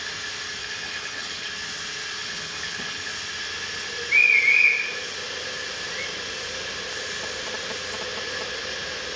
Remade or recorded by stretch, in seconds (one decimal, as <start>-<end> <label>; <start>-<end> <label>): 0.0-0.6 recorded; 0.6-1.5 remade; 1.5-2.2 recorded; 2.2-3.1 remade; 3.1-9.2 recorded